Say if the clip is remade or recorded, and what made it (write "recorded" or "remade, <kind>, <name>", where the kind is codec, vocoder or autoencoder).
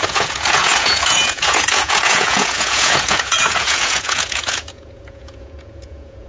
remade, vocoder, Vocos